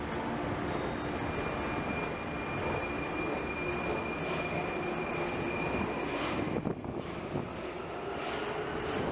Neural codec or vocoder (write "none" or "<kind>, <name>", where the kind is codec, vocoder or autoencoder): none